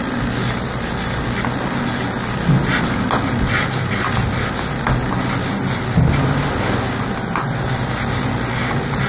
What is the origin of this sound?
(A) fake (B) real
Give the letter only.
B